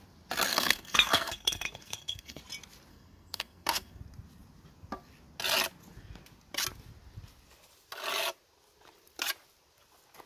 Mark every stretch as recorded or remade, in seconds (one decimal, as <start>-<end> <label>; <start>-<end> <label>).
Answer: 0.0-0.5 recorded; 0.5-2.4 remade; 2.4-2.9 recorded; 2.9-4.0 remade; 4.0-10.3 recorded